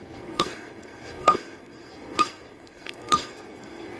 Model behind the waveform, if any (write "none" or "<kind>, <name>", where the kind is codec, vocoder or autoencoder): codec, SNAC